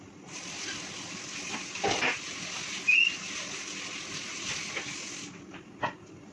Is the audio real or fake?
real